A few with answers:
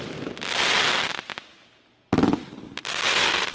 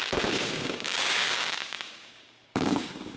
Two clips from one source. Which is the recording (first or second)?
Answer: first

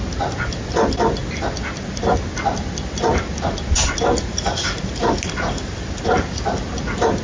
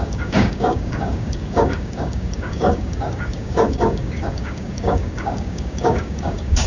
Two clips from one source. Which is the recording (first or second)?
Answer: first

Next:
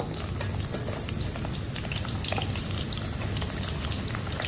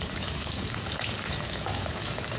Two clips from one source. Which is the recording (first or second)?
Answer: first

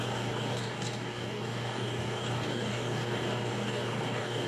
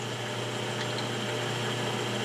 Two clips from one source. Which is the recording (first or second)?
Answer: second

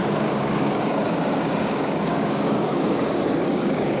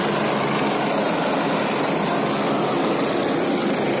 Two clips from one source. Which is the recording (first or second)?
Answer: second